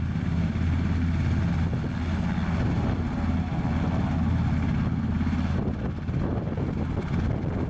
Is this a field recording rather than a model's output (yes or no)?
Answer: yes